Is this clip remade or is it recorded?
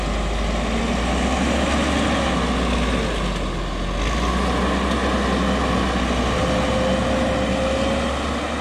recorded